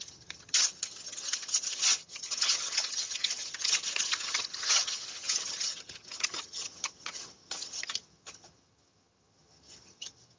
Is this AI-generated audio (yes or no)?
yes